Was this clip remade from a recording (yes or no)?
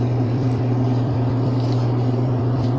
yes